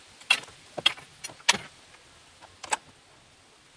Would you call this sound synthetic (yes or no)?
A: no